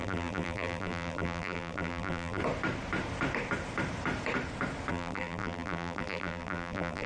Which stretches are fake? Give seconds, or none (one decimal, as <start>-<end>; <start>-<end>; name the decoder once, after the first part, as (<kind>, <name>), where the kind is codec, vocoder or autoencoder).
0.0-2.4 (vocoder, BigVGAN v2); 4.9-7.1